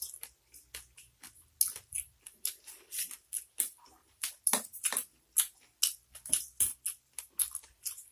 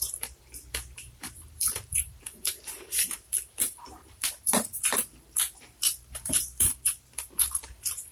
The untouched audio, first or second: first